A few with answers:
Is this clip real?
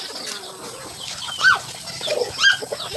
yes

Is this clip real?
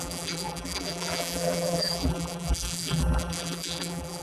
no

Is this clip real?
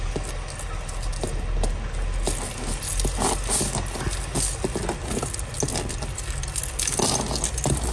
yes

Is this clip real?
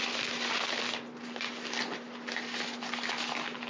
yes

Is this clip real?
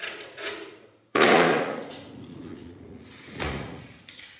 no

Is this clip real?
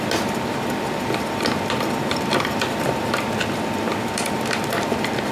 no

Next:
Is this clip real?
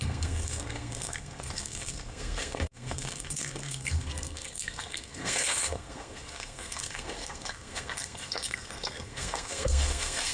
no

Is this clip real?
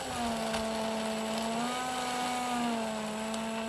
yes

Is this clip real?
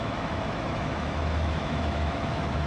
no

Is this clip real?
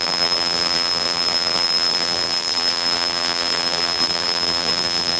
no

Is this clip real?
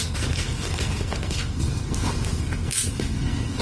no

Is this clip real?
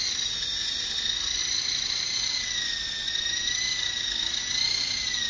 yes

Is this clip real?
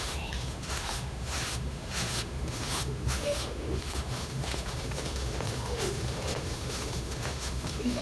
no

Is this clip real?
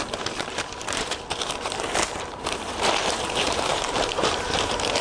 no